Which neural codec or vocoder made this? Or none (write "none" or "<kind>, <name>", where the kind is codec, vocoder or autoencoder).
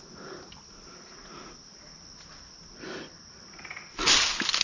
none